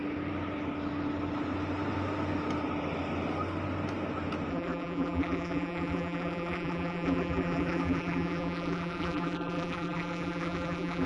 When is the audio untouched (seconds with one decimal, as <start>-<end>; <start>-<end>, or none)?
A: 0.0-4.5